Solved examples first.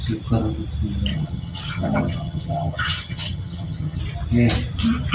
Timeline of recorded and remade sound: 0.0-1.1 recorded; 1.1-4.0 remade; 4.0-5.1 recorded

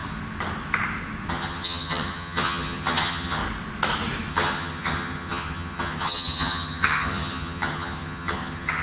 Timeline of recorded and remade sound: 0.0-1.3 recorded; 1.3-3.4 remade; 3.4-4.3 recorded; 4.3-8.8 remade

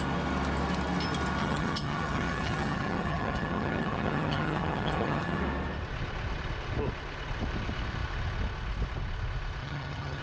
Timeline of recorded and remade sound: 0.0-1.4 recorded; 1.4-5.4 remade; 5.4-9.6 recorded; 9.6-10.2 remade

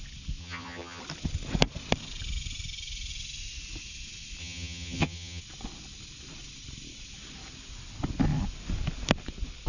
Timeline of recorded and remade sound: 0.0-0.4 recorded; 0.4-1.0 remade; 1.0-4.4 recorded; 4.4-5.4 remade; 5.4-9.7 recorded

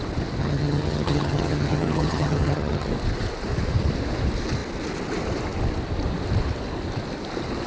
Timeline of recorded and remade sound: 0.0-0.4 recorded; 0.4-2.9 remade; 2.9-7.7 recorded

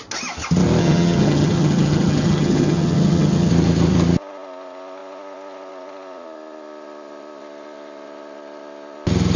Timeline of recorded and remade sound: 0.0-0.8 recorded; 0.8-3.5 remade; 3.5-9.4 recorded